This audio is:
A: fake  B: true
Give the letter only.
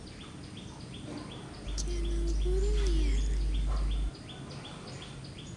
B